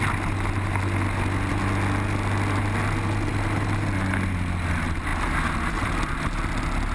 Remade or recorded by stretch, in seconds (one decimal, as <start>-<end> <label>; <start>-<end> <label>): 0.0-6.9 recorded